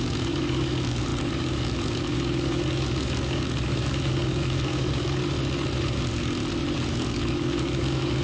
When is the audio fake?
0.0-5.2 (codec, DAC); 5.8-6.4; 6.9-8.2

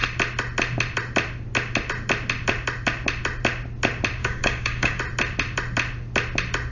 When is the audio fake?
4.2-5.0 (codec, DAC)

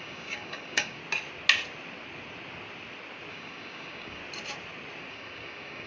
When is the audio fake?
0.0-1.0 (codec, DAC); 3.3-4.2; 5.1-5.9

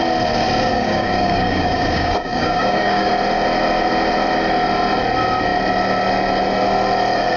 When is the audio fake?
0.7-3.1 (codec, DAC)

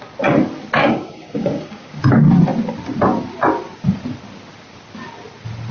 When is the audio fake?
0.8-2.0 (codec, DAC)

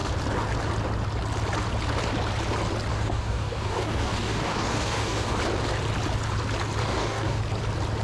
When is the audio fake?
2.9-5.4 (codec, DAC); 6.8-7.4